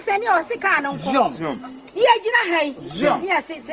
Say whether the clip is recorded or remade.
recorded